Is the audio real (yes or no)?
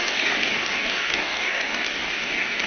no